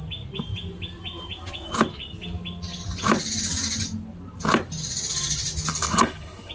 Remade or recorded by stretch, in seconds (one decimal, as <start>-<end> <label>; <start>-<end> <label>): 0.0-5.7 recorded; 5.7-6.5 remade